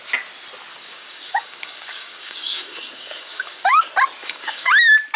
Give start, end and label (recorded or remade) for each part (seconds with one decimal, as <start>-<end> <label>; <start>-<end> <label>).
0.0-0.7 recorded; 0.7-3.8 remade; 3.8-4.2 recorded; 4.2-4.7 remade; 4.7-5.2 recorded